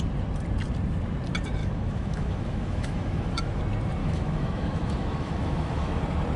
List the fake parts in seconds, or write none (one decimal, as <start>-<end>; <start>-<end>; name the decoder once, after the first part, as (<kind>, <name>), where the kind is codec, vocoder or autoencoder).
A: 1.6-3.6 (autoencoder, DAC-VAE); 4.0-6.0